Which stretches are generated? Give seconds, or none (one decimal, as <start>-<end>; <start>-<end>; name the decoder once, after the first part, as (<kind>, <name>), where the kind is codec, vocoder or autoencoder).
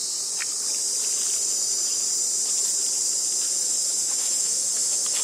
3.8-5.2 (autoencoder, DAC-VAE)